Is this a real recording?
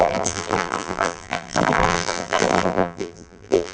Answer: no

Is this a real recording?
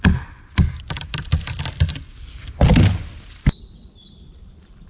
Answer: yes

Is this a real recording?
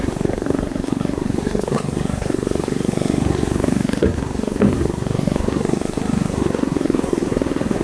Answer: no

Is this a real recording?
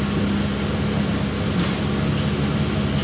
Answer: yes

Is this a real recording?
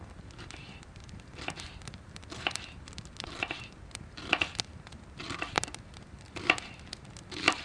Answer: no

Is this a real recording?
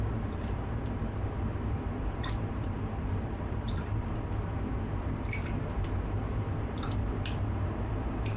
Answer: no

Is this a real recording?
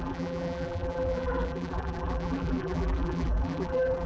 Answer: no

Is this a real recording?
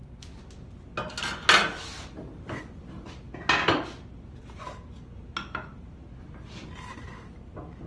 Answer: yes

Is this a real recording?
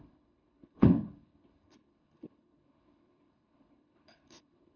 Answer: no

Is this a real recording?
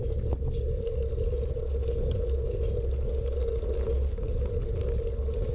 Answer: yes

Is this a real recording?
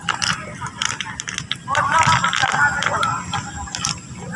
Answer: yes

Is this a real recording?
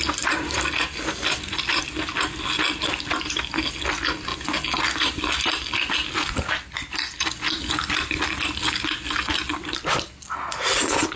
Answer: yes